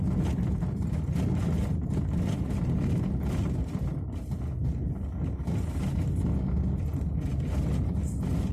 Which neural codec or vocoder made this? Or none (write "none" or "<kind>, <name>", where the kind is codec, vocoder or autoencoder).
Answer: none